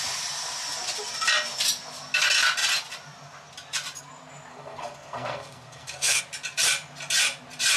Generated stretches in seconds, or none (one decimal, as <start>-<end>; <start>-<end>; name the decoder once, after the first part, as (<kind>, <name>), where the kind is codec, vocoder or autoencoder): 4.5-6.2 (codec, SNAC)